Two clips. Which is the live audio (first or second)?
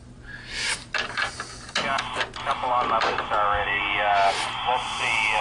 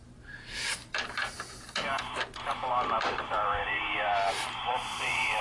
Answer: first